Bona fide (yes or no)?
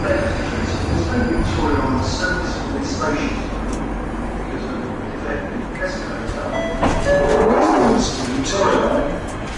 yes